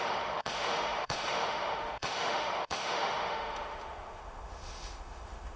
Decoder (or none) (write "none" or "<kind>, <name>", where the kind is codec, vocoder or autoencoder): autoencoder, DAC-VAE